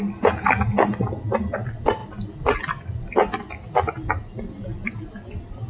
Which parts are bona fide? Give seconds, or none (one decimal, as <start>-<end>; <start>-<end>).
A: 0.0-5.7